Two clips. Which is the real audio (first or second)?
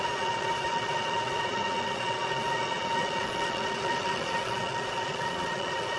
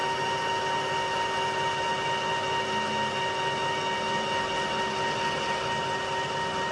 second